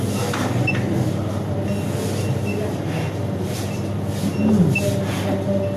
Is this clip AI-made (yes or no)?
no